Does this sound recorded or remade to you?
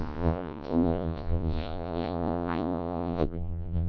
remade